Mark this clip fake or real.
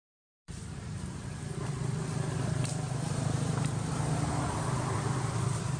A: fake